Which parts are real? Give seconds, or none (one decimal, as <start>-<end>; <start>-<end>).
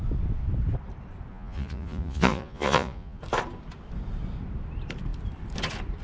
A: 0.0-1.3; 3.2-6.0